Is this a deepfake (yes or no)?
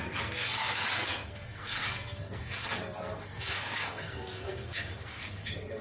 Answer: yes